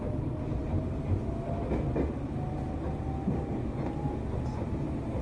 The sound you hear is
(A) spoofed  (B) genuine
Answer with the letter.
B